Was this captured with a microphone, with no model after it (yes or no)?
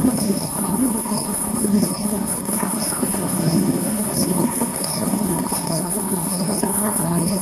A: no